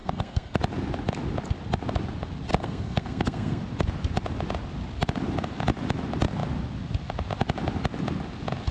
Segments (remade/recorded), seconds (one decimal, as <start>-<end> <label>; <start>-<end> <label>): 0.0-0.6 remade; 0.6-2.5 recorded; 2.5-3.6 remade; 3.6-8.7 recorded